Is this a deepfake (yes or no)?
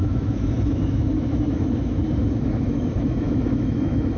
yes